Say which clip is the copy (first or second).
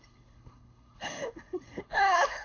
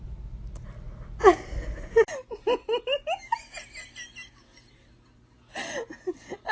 first